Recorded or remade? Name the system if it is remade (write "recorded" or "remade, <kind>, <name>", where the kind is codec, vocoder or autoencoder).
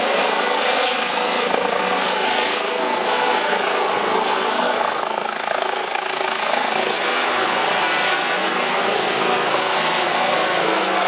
remade, codec, SNAC